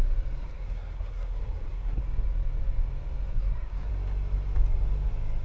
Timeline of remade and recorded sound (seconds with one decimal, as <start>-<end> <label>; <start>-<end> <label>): 0.0-0.4 recorded; 0.4-2.0 remade; 2.0-3.3 recorded; 3.3-3.9 remade; 3.9-5.4 recorded